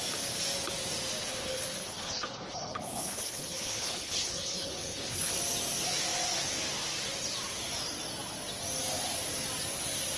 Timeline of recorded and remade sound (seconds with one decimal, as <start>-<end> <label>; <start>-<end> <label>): 0.0-1.2 recorded; 1.2-5.3 remade; 5.3-10.2 recorded

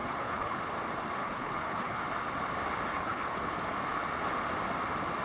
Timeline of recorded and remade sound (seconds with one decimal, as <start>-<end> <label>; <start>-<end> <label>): 0.0-0.6 remade; 0.6-1.2 recorded; 1.2-2.0 remade; 2.0-2.9 recorded; 2.9-3.5 remade; 3.5-5.2 recorded

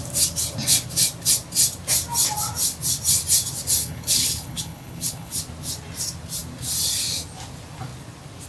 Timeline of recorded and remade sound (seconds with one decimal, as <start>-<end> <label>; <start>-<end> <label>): 0.0-3.8 recorded; 3.8-5.4 remade; 5.4-8.5 recorded

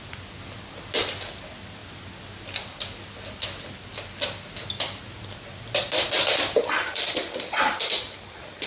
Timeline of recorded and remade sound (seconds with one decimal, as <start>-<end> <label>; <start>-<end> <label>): 0.0-8.7 recorded

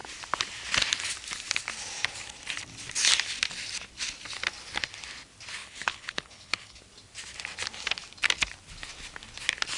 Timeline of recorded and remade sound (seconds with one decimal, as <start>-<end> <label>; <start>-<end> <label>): 0.0-5.6 recorded; 5.6-6.8 remade; 6.8-9.8 recorded